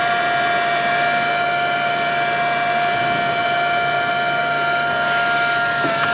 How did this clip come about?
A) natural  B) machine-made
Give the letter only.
A